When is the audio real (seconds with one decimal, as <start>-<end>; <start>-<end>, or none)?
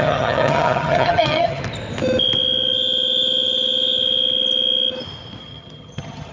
1.6-5.4